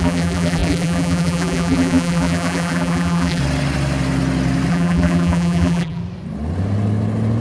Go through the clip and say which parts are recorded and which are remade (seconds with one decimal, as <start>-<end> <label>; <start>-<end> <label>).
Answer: 0.0-3.4 remade; 3.4-4.7 recorded; 4.7-6.0 remade; 6.0-7.4 recorded